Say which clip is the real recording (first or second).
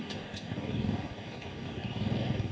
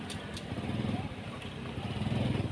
second